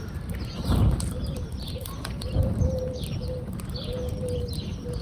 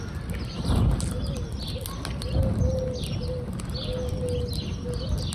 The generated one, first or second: first